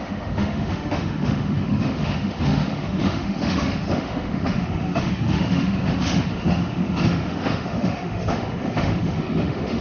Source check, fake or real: fake